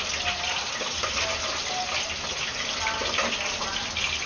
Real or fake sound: real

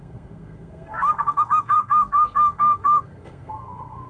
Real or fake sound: fake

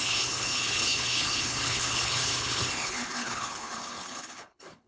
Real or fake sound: fake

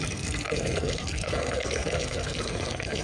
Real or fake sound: fake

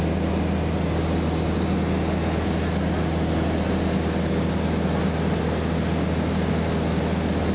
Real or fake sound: real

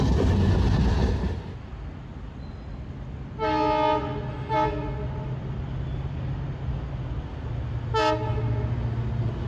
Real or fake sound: real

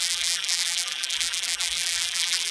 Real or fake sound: fake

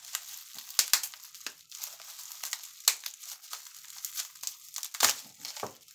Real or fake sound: real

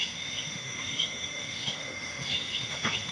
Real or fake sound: fake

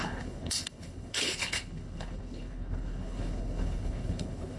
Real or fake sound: fake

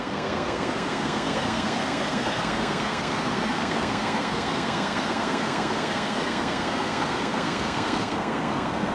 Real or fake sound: fake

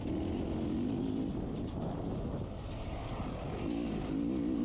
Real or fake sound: real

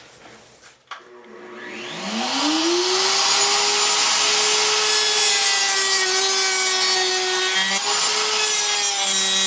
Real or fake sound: real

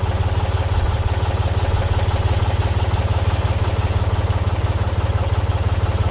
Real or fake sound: real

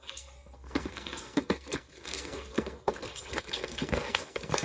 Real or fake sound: fake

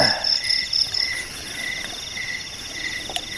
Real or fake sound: real